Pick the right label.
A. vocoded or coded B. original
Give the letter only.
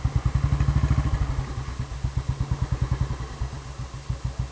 B